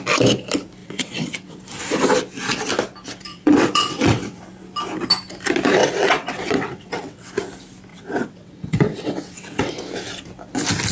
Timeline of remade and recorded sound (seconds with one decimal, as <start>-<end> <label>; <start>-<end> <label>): 0.0-0.8 recorded; 0.8-1.6 remade; 1.6-3.3 recorded; 3.3-4.4 remade; 4.4-5.8 recorded; 5.8-7.3 remade; 7.3-7.9 recorded; 7.9-9.8 remade; 9.8-10.9 recorded